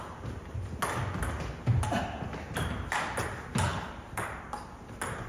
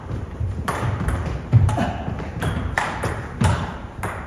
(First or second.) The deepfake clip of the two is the second